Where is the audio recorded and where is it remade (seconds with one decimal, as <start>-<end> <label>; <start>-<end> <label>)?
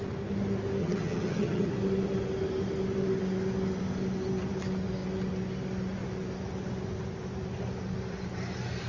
0.0-0.8 recorded; 0.8-1.7 remade; 1.7-8.9 recorded